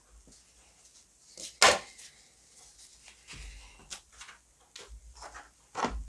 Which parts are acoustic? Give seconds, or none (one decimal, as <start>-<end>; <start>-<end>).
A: 0.0-6.1